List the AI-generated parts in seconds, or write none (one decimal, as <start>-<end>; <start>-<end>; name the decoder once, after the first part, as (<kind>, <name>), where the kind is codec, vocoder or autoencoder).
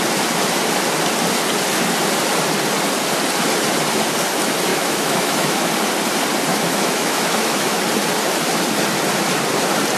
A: 4.7-5.7 (autoencoder, DAC-VAE); 6.5-7.8